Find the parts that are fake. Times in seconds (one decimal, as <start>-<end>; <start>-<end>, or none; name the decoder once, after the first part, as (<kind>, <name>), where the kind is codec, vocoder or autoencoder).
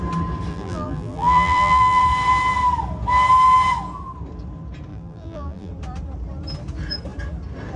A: 0.5-2.0 (vocoder, BigVGAN v2); 4.9-5.7